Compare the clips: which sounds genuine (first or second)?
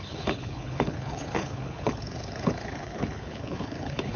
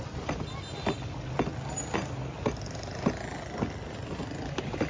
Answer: second